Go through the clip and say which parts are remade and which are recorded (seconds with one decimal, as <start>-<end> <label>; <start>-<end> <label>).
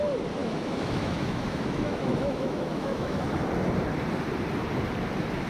0.0-0.4 recorded; 0.4-3.2 remade; 3.2-5.5 recorded